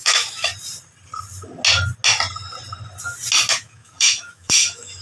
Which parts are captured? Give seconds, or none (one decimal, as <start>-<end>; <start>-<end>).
0.5-3.5

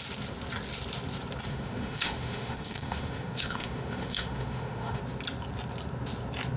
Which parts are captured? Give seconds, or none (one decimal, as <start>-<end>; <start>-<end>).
0.0-1.5; 5.0-6.6

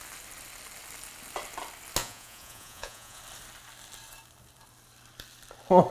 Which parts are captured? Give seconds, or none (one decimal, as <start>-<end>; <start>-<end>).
0.0-2.0; 3.2-5.9

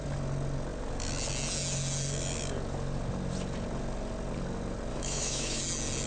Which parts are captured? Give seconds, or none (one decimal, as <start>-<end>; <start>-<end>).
0.0-4.9; 5.6-6.1